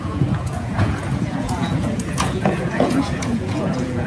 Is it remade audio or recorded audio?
remade